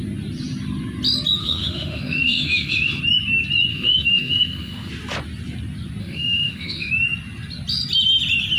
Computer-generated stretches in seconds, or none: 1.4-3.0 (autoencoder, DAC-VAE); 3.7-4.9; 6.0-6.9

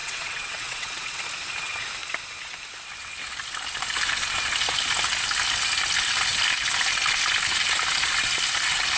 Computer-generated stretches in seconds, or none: 0.0-1.2 (vocoder, WaveNeXt)